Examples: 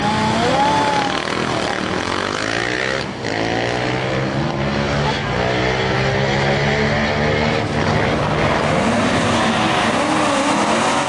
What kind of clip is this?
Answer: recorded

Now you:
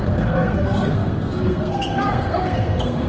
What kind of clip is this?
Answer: remade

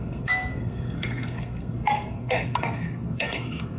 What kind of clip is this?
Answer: remade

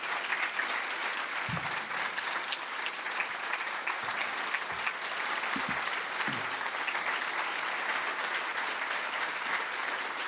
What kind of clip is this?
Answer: recorded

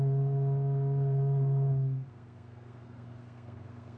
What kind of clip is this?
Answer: remade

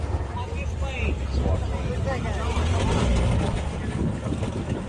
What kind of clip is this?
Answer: recorded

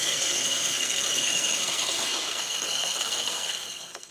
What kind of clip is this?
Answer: remade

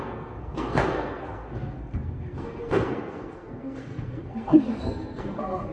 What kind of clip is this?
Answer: remade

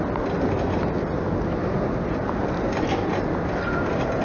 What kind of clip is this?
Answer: recorded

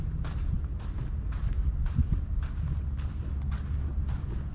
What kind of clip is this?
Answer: recorded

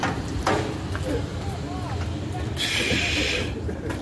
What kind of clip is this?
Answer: recorded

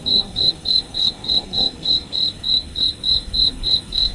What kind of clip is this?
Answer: remade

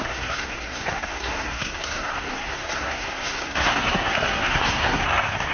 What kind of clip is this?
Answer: remade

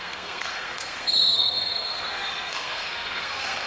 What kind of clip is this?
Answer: remade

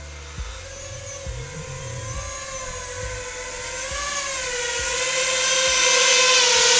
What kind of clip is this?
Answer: recorded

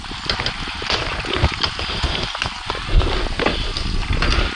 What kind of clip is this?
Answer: recorded